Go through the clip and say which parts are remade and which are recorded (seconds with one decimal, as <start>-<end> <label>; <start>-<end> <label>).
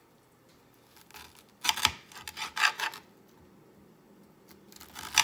0.0-5.2 recorded